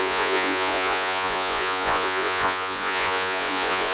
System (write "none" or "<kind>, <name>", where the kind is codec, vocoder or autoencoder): vocoder, Vocos